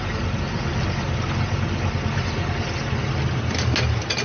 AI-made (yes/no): no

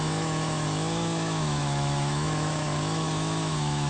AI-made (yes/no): yes